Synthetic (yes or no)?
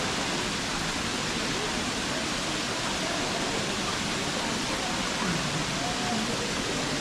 no